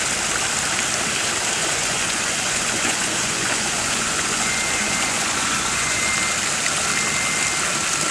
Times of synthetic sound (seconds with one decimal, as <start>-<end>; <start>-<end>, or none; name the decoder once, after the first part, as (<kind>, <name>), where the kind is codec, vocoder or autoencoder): 1.6-6.1 (vocoder, Vocos)